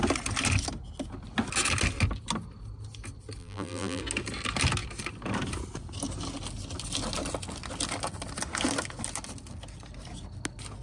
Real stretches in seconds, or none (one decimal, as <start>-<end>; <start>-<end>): 0.0-3.4; 4.0-10.8